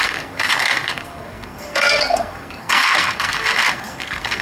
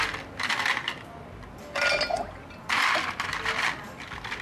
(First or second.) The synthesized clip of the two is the first